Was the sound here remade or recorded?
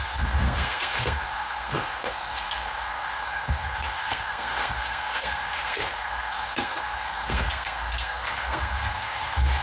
remade